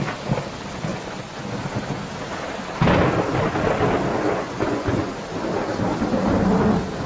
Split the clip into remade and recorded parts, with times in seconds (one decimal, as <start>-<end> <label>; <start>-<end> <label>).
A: 0.0-0.9 recorded; 0.9-1.4 remade; 1.4-4.1 recorded; 4.1-5.1 remade; 5.1-7.1 recorded